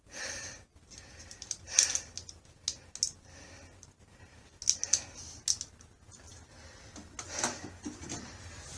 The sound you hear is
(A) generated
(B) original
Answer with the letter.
B